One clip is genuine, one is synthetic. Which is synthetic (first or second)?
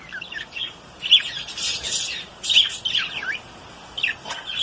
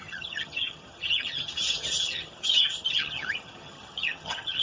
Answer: second